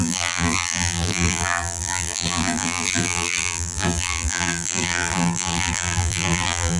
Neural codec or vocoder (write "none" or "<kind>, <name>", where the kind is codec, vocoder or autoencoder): vocoder, BigVGAN v2